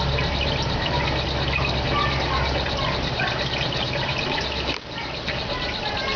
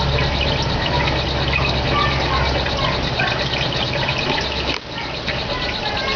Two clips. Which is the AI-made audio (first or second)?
first